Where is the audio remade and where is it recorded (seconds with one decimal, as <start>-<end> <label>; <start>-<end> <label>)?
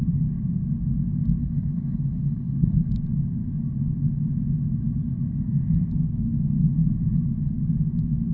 0.0-1.4 recorded; 1.4-2.9 remade; 2.9-8.3 recorded